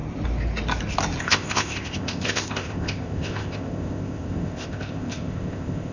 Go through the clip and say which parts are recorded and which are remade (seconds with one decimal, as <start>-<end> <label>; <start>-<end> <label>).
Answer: 0.0-1.2 recorded; 1.2-5.9 remade